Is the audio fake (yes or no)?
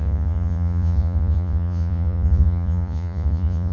yes